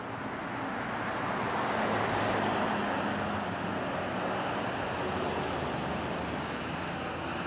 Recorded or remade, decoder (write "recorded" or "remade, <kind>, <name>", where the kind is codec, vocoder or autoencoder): recorded